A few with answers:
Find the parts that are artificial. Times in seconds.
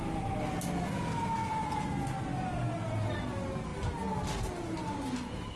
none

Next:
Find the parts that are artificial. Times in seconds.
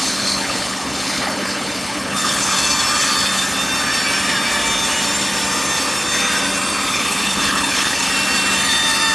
0.0-2.5 (codec, HILCodec); 6.9-8.1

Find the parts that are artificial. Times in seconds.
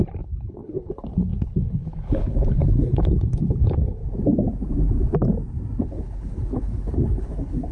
0.0-4.0 (codec, HILCodec); 5.8-7.7